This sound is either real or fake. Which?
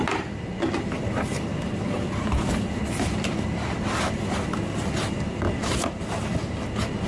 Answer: real